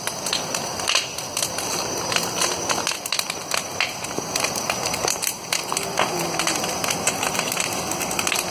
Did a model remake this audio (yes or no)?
no